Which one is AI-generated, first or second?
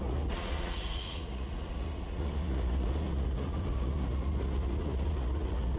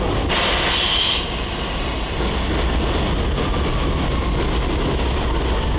first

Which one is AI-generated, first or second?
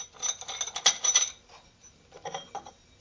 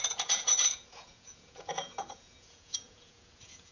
second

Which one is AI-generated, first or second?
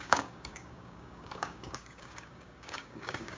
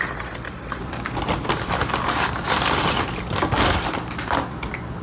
first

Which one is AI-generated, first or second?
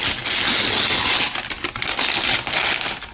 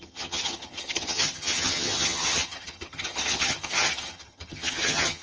second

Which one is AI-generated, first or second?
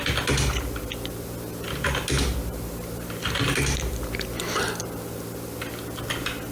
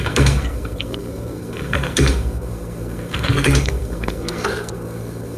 second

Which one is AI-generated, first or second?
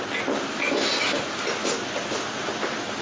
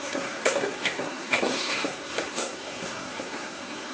second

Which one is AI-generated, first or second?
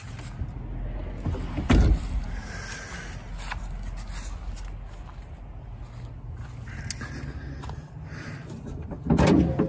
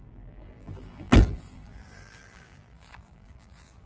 second